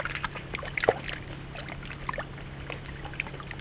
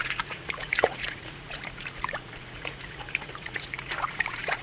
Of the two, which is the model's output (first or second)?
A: second